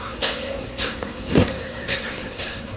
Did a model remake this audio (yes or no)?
yes